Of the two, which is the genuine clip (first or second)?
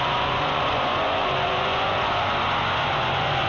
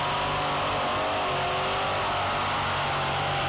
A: second